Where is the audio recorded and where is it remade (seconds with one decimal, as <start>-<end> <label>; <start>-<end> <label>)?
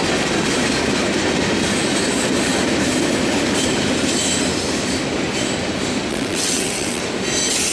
0.0-6.1 recorded; 6.1-7.0 remade; 7.0-7.7 recorded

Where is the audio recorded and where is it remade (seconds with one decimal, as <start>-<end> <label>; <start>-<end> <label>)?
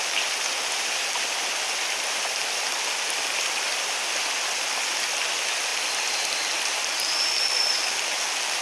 0.0-8.6 recorded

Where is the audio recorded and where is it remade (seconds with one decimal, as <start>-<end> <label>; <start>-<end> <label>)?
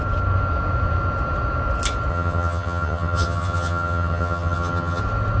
0.0-2.1 recorded; 2.1-5.0 remade; 5.0-5.4 recorded